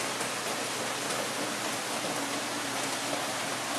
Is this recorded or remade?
recorded